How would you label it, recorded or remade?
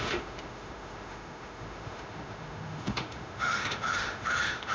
remade